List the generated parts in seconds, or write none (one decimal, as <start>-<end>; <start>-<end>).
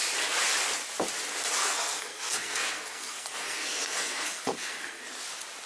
1.6-5.0